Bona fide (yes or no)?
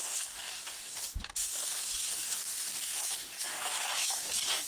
no